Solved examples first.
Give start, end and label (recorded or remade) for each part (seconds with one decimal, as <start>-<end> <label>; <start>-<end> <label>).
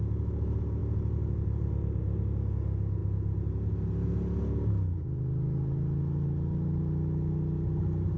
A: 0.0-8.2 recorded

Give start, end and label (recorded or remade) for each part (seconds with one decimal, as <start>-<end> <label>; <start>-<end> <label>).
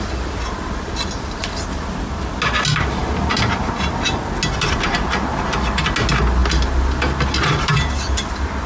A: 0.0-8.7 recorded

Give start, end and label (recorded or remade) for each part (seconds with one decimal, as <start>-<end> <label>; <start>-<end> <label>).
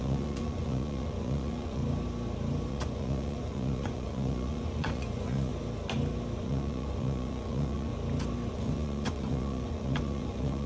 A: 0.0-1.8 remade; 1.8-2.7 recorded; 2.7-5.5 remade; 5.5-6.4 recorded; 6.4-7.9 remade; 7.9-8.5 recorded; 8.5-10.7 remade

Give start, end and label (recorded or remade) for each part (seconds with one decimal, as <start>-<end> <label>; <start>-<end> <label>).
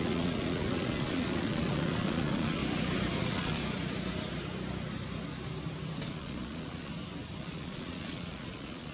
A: 0.0-2.6 remade; 2.6-3.2 recorded; 3.2-3.6 remade; 3.6-6.0 recorded; 6.0-6.9 remade; 6.9-7.4 recorded; 7.4-8.9 remade